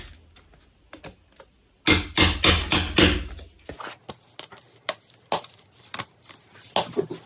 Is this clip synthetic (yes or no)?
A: no